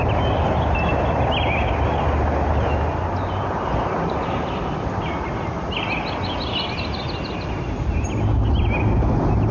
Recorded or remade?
recorded